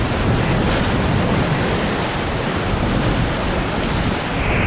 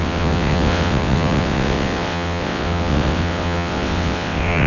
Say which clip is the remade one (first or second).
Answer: second